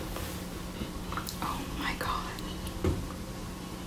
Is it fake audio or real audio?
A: real